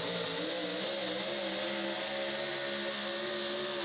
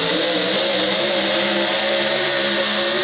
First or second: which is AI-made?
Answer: second